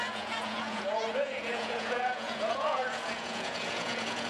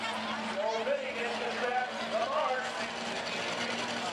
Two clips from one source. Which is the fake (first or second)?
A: first